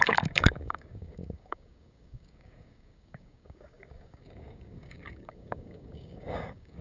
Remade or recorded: remade